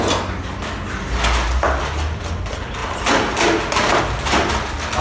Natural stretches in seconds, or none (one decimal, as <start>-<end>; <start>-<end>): 0.0-5.0